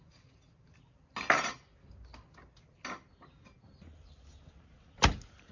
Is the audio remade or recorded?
recorded